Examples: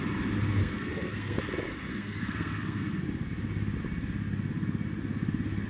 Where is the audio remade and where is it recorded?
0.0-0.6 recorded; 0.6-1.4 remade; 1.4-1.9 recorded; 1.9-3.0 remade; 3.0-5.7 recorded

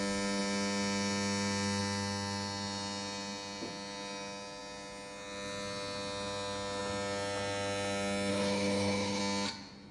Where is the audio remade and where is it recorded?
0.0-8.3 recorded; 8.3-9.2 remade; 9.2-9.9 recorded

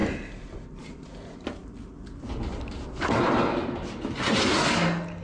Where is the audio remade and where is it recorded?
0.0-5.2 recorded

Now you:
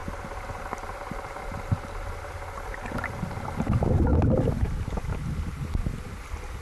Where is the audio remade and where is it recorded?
0.0-6.6 recorded